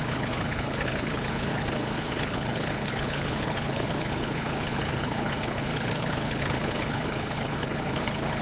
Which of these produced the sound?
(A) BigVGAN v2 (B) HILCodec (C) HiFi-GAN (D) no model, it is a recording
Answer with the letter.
B